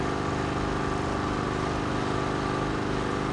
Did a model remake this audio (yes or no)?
no